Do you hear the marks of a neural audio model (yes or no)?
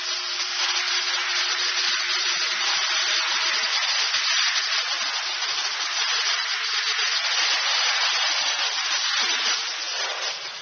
no